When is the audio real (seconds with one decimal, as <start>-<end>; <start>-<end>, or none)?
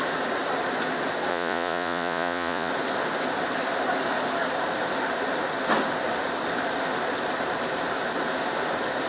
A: 0.0-1.3; 2.7-9.1